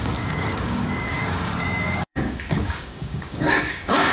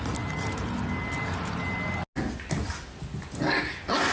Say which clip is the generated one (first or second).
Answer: first